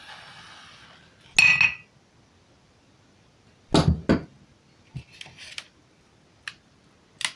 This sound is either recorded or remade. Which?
recorded